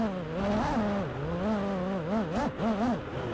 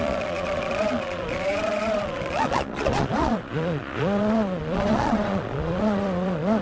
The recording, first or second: first